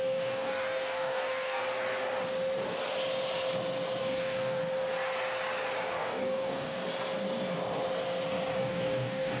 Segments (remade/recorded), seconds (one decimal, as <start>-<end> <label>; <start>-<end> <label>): 0.0-1.6 remade; 1.6-4.0 recorded; 4.0-4.6 remade; 4.6-5.9 recorded; 5.9-6.8 remade; 6.8-8.6 recorded; 8.6-9.4 remade